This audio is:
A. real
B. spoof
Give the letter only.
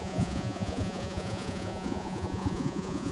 B